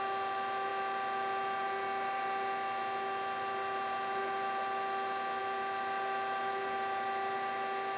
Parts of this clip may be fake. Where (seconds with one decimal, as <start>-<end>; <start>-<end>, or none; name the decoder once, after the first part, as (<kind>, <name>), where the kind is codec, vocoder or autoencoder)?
none